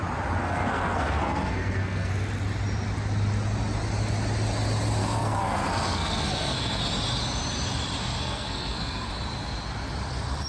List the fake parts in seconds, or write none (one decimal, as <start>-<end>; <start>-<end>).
0.4-2.1; 5.0-6.8; 8.0-9.1

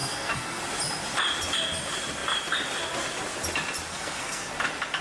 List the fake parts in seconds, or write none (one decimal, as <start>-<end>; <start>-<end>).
0.0-0.6; 3.9-4.5